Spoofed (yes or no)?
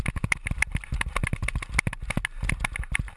no